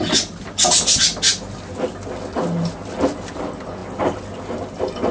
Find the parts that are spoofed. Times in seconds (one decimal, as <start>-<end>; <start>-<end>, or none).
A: none